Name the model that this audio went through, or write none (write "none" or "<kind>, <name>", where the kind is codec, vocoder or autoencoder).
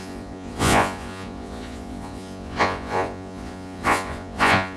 vocoder, Vocos